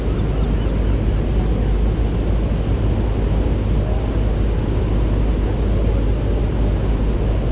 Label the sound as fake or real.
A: real